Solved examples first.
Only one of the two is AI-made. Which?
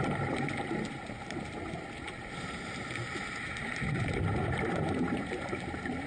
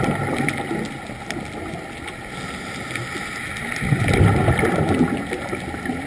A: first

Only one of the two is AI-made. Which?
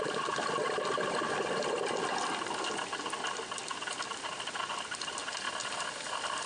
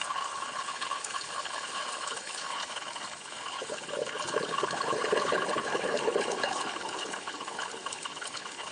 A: second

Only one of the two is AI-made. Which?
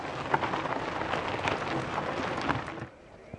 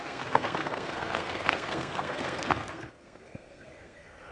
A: second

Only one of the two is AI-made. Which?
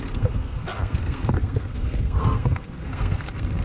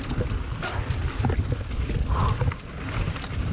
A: first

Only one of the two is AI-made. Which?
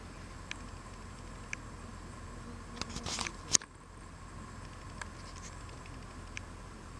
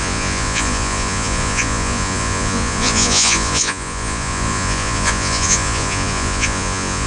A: second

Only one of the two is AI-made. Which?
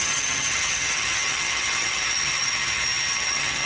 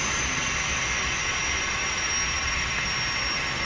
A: first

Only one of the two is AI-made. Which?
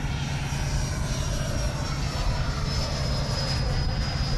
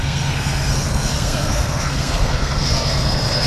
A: second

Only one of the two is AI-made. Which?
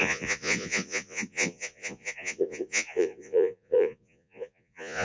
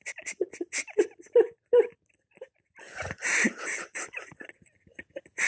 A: first